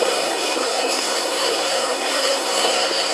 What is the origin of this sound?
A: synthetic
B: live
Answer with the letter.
A